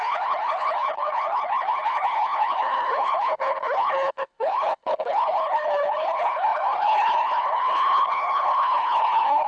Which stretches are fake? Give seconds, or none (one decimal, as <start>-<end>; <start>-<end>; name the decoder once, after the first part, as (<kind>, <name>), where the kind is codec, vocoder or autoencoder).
0.0-9.5 (codec, HILCodec)